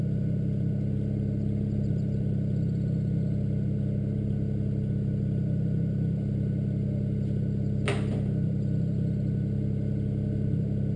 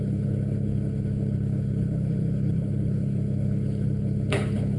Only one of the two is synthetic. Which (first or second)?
second